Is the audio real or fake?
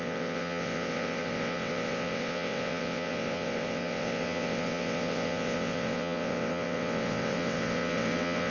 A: fake